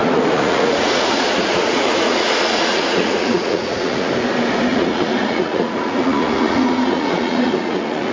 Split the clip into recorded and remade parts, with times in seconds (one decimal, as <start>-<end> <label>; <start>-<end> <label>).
0.0-4.1 remade; 4.1-4.7 recorded; 4.7-8.1 remade